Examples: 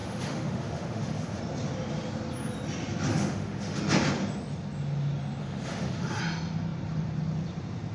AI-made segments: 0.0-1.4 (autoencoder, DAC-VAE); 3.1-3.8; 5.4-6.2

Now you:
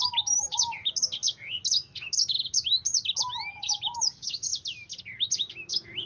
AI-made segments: 0.0-4.5 (autoencoder, DAC-VAE); 5.0-6.1

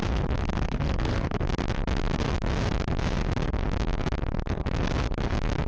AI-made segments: 0.4-1.4 (autoencoder, DAC-VAE)

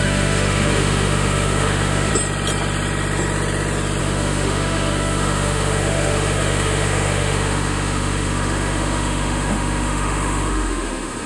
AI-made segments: 0.0-2.1 (autoencoder, DAC-VAE); 4.0-11.3

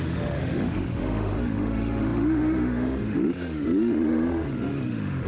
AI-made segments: 0.0-5.3 (autoencoder, DAC-VAE)

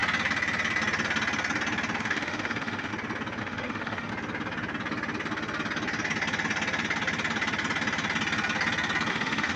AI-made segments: 2.0-2.9 (autoencoder, DAC-VAE); 3.4-4.1; 9.1-9.6